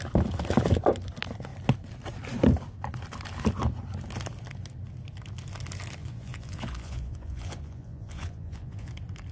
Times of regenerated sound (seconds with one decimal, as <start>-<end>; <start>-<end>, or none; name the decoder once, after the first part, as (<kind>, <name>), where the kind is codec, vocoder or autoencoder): 6.0-8.9 (vocoder, Vocos)